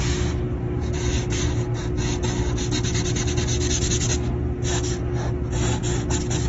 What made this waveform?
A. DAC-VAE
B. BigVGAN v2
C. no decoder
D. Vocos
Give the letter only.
C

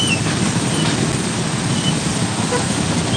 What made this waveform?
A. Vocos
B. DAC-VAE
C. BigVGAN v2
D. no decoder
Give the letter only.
D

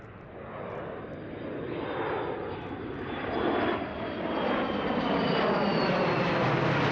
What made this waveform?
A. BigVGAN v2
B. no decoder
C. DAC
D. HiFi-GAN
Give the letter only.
A